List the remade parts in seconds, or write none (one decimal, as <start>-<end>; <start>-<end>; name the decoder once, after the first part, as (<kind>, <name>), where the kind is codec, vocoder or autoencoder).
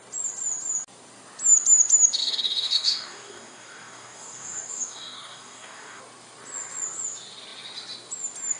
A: 2.2-6.0 (codec, DAC)